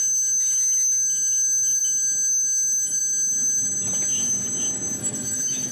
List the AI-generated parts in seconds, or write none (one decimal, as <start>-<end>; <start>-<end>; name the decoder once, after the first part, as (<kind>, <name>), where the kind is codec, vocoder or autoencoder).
5.0-5.7 (autoencoder, DAC-VAE)

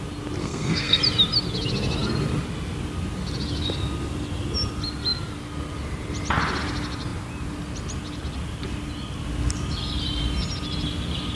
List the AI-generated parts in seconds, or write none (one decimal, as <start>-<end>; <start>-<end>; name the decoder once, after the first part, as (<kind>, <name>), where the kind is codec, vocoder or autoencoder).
0.4-1.0 (codec, SNAC)

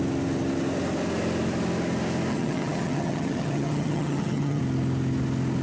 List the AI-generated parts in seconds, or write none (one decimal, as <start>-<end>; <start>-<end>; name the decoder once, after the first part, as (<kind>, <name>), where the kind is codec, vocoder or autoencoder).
2.3-4.6 (vocoder, HiFi-GAN)

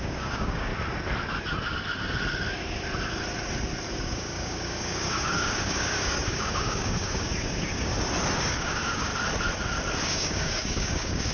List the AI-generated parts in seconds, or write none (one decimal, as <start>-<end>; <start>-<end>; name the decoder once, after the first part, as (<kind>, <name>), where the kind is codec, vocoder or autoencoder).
0.0-0.7 (codec, DAC); 3.9-7.9; 8.4-9.1; 10.0-11.3

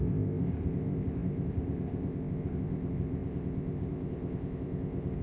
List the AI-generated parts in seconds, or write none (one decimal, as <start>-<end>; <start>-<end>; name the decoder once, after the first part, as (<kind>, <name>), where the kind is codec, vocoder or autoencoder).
0.0-5.2 (codec, ZipCodec)

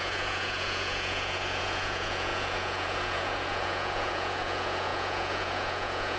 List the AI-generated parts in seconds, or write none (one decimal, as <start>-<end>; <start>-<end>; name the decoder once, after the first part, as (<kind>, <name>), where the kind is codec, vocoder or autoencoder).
0.0-6.2 (vocoder, Vocos)

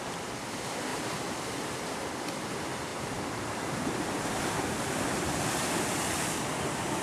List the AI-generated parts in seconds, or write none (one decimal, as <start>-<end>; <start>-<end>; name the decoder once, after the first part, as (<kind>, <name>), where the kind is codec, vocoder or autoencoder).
0.9-1.8 (vocoder, BigVGAN v2); 2.9-5.6